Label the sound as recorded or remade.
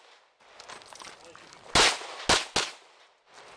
recorded